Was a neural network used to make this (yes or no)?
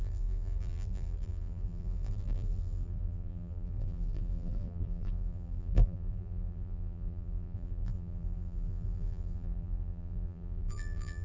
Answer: yes